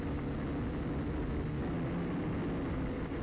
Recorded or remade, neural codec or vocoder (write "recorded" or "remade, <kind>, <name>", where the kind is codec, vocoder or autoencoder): recorded